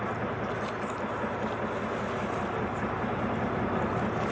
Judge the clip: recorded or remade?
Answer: recorded